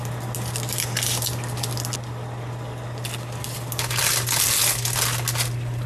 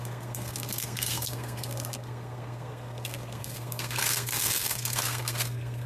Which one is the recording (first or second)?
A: first